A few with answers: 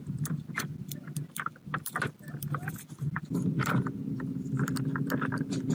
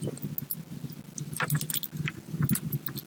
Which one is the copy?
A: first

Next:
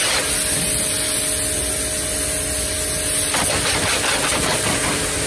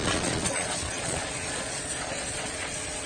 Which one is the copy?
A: second